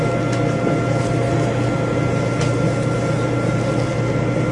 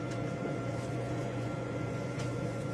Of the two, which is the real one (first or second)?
first